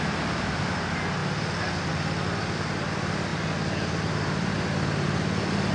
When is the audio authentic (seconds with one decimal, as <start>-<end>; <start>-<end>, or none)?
0.0-5.7